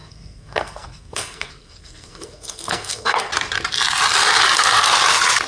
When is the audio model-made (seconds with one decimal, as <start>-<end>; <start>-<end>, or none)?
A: 0.0-3.3